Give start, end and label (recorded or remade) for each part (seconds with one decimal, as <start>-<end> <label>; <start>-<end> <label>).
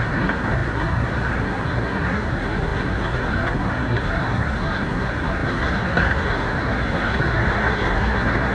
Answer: 0.0-8.5 remade